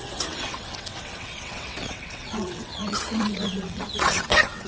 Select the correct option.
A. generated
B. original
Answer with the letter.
A